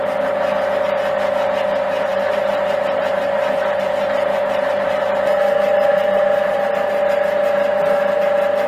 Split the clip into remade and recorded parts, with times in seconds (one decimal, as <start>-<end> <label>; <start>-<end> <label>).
0.0-2.1 recorded; 2.1-4.9 remade; 4.9-5.9 recorded; 5.9-6.7 remade; 6.7-8.7 recorded

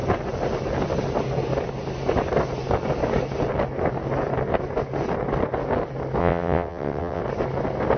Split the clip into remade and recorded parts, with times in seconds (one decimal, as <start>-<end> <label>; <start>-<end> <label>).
0.0-6.2 recorded; 6.2-7.2 remade; 7.2-8.0 recorded

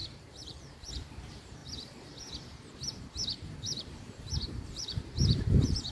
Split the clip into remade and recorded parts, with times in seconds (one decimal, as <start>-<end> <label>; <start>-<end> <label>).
0.0-1.6 remade; 1.6-3.0 recorded; 3.0-5.9 remade

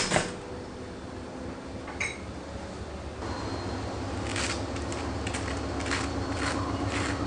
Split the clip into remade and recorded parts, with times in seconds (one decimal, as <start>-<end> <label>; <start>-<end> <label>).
0.0-7.3 recorded

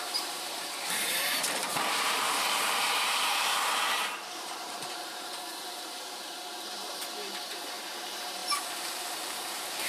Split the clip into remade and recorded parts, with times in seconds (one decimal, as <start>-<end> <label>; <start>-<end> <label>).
0.0-9.9 remade

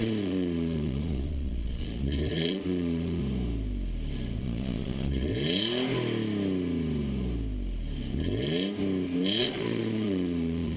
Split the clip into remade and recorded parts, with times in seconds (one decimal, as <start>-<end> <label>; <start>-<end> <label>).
0.0-3.2 remade; 3.2-4.4 recorded; 4.4-5.3 remade; 5.3-9.4 recorded; 9.4-10.8 remade

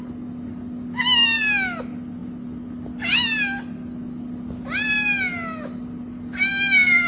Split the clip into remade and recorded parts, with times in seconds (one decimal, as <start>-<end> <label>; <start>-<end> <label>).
0.0-7.1 recorded

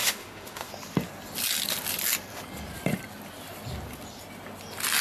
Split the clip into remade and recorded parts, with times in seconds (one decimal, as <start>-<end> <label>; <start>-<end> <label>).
0.0-0.7 remade; 0.7-5.0 recorded